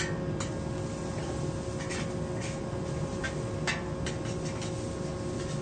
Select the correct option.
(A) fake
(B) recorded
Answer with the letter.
B